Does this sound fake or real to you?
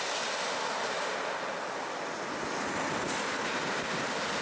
real